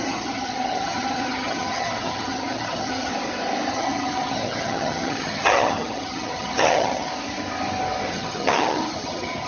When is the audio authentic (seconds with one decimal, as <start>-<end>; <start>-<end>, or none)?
3.1-3.7; 7.1-8.1